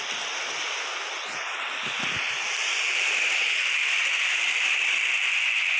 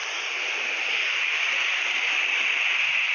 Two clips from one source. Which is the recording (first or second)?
second